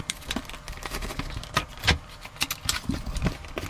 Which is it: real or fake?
real